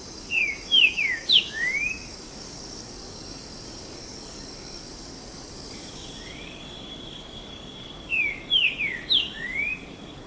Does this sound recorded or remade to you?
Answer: remade